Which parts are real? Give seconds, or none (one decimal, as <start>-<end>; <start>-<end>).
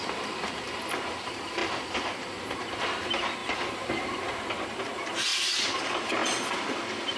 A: 0.0-5.3; 5.8-7.2